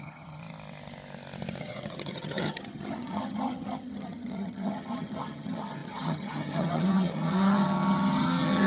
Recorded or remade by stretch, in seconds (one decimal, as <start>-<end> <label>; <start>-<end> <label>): 0.0-0.4 remade; 0.4-1.6 recorded; 1.6-8.7 remade